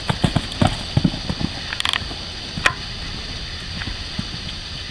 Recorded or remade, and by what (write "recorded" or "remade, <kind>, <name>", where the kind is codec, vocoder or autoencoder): recorded